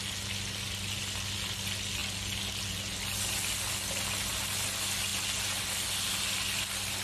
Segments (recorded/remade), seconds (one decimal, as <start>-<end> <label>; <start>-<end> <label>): 0.0-7.0 recorded